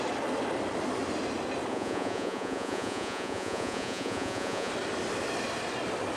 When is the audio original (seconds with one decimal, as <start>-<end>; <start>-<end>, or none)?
0.0-1.7; 4.7-6.2